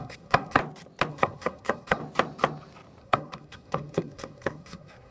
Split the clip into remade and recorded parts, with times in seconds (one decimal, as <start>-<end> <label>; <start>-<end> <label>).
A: 0.0-0.6 remade; 0.6-1.1 recorded; 1.1-2.0 remade; 2.0-3.0 recorded; 3.0-5.1 remade